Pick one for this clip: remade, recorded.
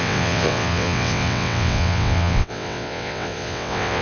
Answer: remade